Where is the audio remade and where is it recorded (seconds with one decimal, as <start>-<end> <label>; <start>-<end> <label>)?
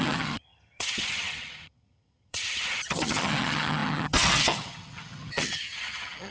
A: 0.0-6.3 remade